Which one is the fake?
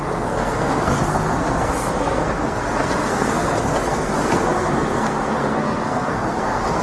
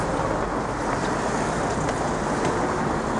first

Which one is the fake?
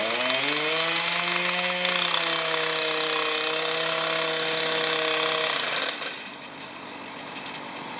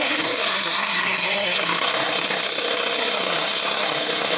second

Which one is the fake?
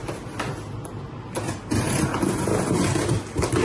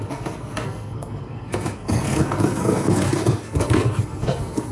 second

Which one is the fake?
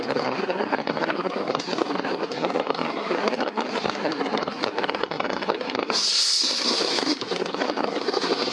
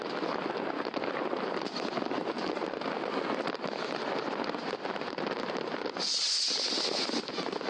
first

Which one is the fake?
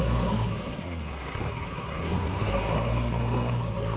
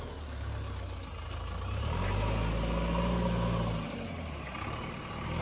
first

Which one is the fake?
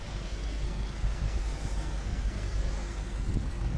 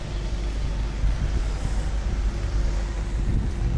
first